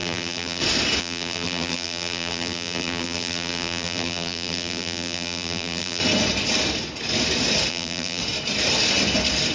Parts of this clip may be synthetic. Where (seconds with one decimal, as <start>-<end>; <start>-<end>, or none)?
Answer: 0.0-0.6; 1.0-6.0; 7.7-8.2